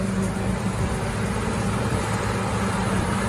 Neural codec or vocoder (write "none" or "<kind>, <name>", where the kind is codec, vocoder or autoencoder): none